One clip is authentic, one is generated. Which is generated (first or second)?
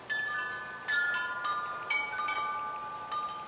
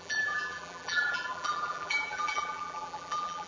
second